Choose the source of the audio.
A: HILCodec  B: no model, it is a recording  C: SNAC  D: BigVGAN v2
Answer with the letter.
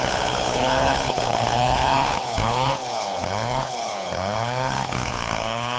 A